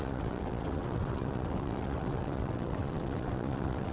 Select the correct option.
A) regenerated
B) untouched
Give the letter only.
A